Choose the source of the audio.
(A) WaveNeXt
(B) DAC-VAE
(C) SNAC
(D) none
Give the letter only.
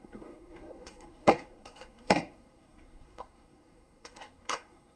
C